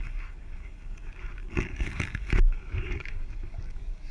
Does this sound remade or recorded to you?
remade